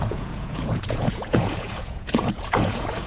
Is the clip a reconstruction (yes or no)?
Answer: yes